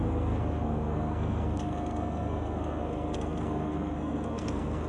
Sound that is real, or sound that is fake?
fake